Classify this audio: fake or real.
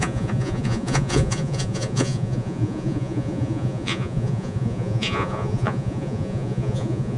fake